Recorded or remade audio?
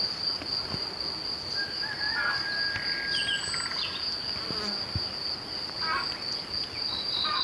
recorded